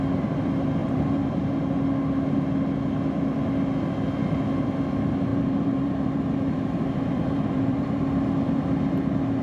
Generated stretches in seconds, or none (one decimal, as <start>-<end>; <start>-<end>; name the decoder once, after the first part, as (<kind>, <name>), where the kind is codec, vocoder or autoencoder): 0.8-1.5 (vocoder, BigVGAN v2); 5.3-8.0